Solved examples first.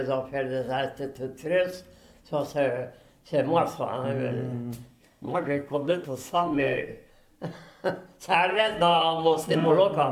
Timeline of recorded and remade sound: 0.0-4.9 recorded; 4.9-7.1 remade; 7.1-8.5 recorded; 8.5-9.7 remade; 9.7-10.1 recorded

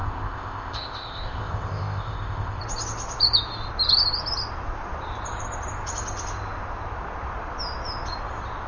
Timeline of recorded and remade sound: 0.0-2.6 remade; 2.6-8.7 recorded

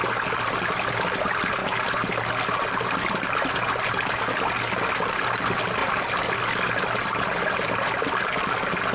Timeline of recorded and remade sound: 0.0-8.9 recorded